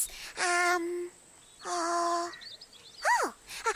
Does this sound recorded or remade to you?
recorded